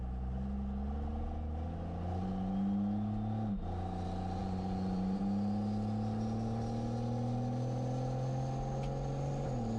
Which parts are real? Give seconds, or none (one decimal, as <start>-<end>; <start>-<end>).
0.0-4.4; 5.2-9.8